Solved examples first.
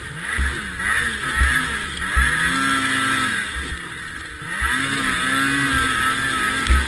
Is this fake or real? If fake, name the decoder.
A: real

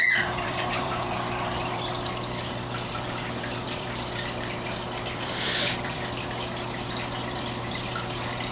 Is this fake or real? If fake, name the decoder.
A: fake, vocoder, BigVGAN v2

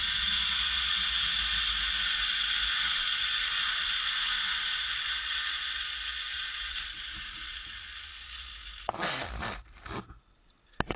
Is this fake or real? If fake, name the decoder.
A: real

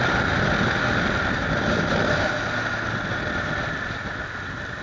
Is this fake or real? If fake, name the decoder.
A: real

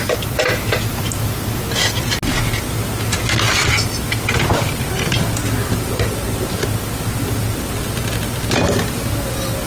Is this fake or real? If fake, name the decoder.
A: real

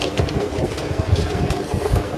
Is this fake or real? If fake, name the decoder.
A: fake, codec, SNAC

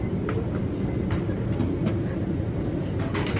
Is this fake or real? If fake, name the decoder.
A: real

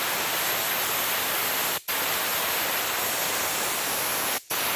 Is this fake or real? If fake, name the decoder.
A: real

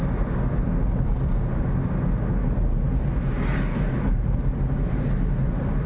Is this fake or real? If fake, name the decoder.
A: real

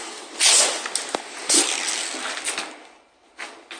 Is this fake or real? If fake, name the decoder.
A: real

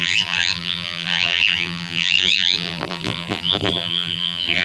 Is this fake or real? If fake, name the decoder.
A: fake, vocoder, BigVGAN v2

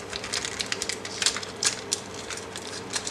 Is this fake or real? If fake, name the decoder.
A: fake, vocoder, BigVGAN v2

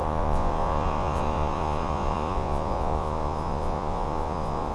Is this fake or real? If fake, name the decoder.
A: fake, vocoder, Vocos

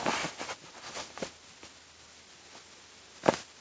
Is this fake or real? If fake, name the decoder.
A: real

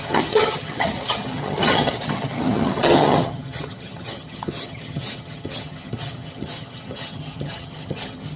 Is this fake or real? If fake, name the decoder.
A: fake, vocoder, HiFi-GAN